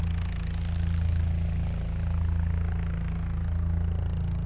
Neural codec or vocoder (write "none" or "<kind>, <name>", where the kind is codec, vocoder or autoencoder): none